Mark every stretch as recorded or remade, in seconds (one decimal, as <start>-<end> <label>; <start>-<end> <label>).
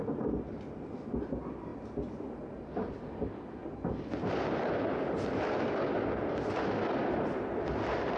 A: 0.0-8.2 recorded